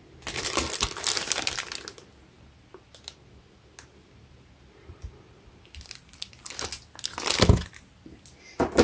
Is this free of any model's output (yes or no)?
yes